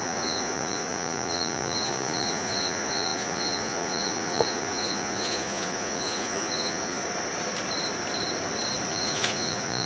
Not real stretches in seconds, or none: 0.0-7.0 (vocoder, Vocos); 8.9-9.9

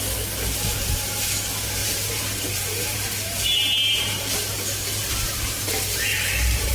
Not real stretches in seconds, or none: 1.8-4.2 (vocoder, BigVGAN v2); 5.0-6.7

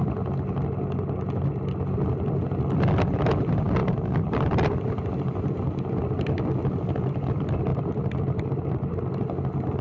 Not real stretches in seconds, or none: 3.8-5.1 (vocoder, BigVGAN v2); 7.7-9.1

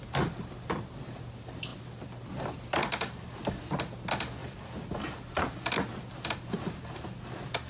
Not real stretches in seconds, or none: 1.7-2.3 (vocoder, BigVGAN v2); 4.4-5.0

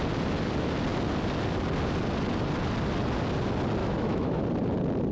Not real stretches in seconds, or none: 3.8-4.4 (autoencoder, DAC-VAE)

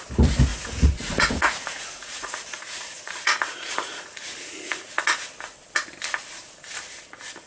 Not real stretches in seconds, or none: 0.5-5.0 (vocoder, Vocos)